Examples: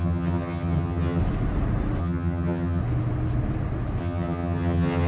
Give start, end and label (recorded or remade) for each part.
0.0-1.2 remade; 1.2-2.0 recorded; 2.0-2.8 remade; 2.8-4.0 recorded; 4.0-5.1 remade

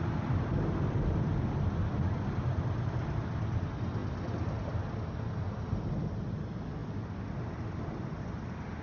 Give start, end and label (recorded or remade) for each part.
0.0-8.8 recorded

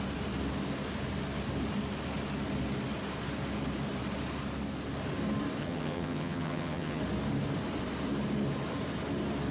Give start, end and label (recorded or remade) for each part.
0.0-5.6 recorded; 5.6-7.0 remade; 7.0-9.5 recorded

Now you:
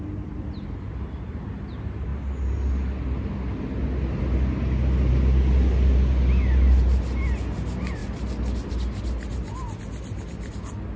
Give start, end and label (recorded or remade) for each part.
0.0-11.0 recorded

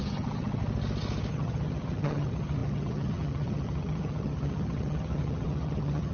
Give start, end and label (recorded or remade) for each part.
0.0-0.6 remade; 0.6-1.3 recorded; 1.3-6.1 remade

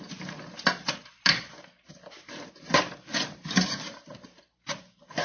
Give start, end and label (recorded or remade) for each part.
0.0-5.2 recorded

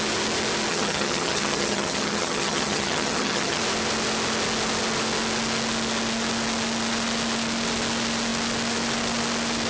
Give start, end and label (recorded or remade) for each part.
0.0-0.7 recorded; 0.7-3.6 remade; 3.6-9.7 recorded